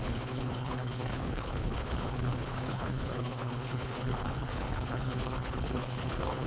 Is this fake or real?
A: fake